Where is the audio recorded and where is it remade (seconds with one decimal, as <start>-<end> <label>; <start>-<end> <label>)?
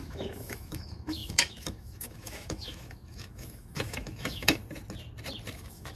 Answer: 0.0-4.6 remade; 4.6-5.5 recorded; 5.5-6.0 remade